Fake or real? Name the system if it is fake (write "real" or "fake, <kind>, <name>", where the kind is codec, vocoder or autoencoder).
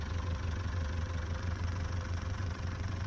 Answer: fake, vocoder, WaveNeXt